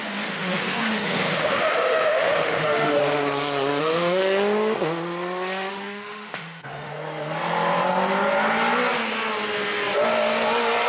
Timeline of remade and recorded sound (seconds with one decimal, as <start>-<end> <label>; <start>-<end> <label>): 0.0-3.0 remade; 3.0-3.8 recorded; 3.8-4.2 remade; 4.2-5.7 recorded; 5.7-6.9 remade; 6.9-10.9 recorded